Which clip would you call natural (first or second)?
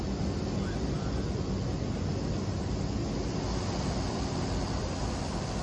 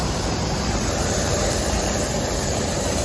first